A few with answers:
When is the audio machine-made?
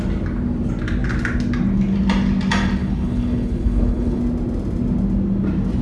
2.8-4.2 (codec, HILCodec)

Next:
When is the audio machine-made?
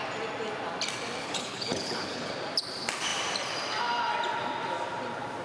1.2-2.3 (codec, HILCodec)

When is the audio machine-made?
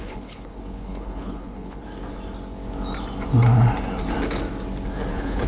0.0-1.8 (codec, HILCodec); 5.1-5.5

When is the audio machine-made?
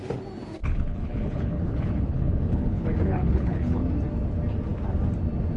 0.6-3.8 (codec, HILCodec)